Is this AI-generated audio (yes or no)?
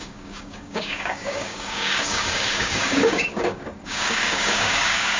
yes